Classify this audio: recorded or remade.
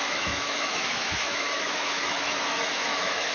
remade